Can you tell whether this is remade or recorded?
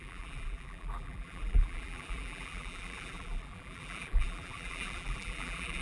remade